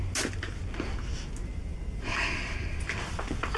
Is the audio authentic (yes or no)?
yes